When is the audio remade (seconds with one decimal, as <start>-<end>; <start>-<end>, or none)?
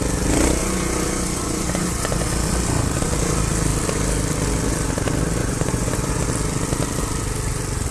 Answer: 0.6-2.3; 5.4-6.2